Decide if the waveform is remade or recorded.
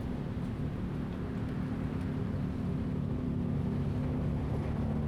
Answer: recorded